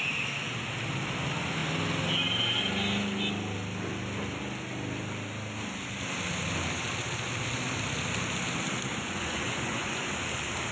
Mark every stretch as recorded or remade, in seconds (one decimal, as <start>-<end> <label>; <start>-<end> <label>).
0.0-8.9 recorded; 8.9-10.1 remade; 10.1-10.7 recorded